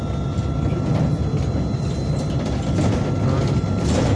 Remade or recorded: remade